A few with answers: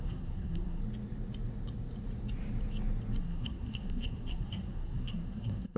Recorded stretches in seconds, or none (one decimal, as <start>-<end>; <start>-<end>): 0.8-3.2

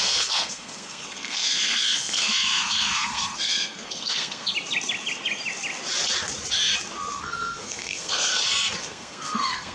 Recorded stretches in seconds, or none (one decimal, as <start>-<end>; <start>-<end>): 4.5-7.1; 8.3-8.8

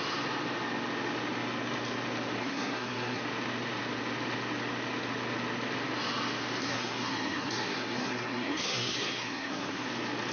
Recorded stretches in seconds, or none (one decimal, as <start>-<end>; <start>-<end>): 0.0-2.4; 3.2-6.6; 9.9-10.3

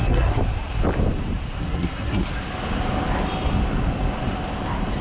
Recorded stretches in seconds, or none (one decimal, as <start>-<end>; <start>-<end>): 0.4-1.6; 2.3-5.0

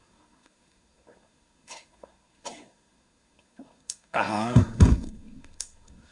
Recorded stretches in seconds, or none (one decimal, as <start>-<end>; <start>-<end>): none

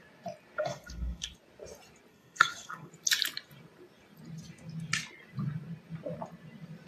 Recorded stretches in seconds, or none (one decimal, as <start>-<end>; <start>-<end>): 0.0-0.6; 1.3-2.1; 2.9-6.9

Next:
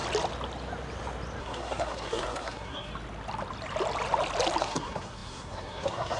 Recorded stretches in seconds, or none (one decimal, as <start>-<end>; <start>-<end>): 0.0-1.4; 2.9-4.6